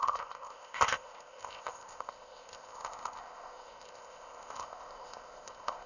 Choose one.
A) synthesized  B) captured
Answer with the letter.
A